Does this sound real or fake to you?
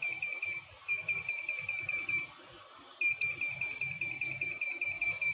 real